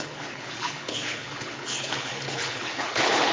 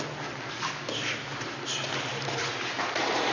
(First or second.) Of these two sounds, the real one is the second